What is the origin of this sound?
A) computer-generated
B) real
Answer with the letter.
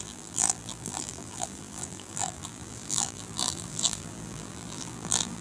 A